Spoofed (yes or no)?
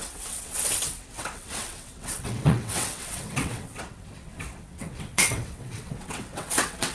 yes